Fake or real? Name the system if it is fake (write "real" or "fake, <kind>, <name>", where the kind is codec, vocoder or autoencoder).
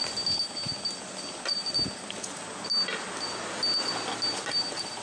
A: real